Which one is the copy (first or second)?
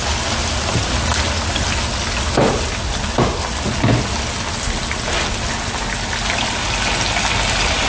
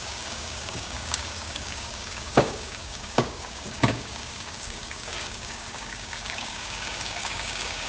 second